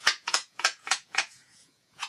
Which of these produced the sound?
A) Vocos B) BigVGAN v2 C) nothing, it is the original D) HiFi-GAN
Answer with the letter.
A